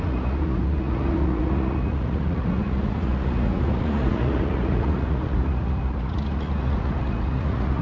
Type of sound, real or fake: fake